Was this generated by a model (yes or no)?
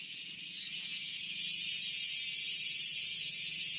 yes